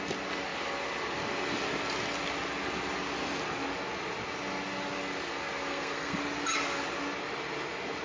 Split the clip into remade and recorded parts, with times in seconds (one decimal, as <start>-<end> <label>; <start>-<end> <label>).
0.0-5.7 recorded; 5.7-6.2 remade; 6.2-8.0 recorded